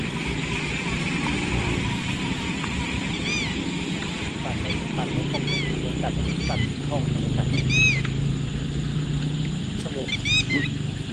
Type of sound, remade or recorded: recorded